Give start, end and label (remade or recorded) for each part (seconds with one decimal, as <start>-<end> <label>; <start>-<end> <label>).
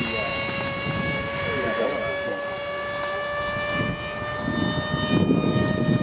0.0-2.0 remade; 2.0-5.5 recorded; 5.5-6.0 remade